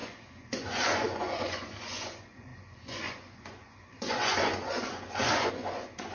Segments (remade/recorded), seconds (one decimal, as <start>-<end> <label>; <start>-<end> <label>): 0.0-6.1 remade